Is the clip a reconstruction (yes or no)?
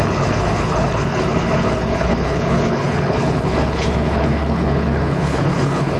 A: yes